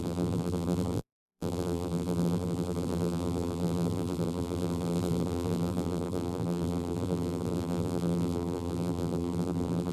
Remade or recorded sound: remade